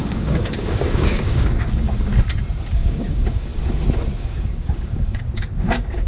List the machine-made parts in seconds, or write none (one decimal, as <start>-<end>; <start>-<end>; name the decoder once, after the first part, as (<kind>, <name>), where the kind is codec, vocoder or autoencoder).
0.0-2.1 (codec, DAC); 2.7-3.5; 4.2-6.1